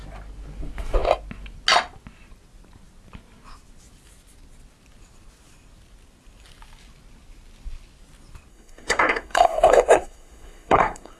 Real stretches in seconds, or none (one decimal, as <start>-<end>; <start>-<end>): 0.0-8.5